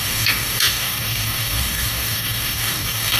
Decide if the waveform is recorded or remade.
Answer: remade